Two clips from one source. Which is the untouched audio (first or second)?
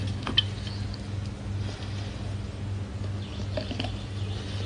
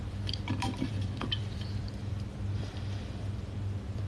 first